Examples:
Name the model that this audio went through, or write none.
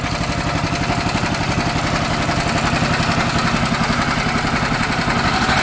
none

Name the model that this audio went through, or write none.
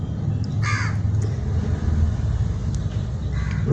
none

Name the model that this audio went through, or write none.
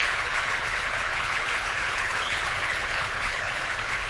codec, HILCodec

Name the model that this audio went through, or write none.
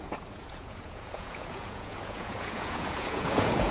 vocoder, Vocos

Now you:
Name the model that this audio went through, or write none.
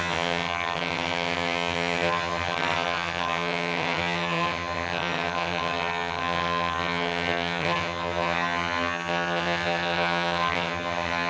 vocoder, HiFi-GAN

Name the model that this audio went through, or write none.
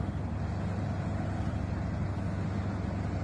none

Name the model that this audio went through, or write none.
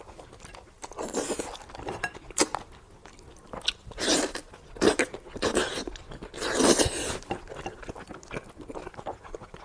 none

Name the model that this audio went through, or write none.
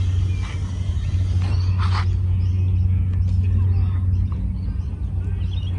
none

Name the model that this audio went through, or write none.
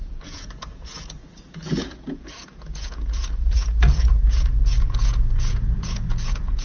vocoder, Vocos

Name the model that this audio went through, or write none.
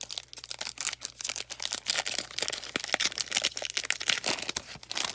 none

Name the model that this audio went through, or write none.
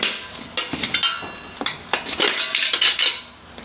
none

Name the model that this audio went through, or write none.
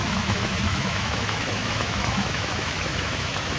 autoencoder, DAC-VAE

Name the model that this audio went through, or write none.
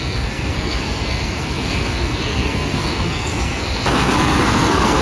codec, SNAC